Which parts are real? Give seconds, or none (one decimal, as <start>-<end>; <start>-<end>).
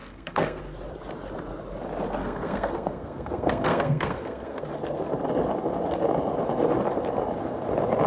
0.6-2.2; 4.6-8.1